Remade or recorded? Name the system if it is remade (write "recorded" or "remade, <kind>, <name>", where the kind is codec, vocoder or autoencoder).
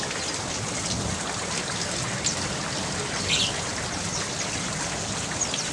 recorded